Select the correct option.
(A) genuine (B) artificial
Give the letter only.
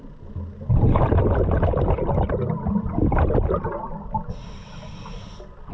A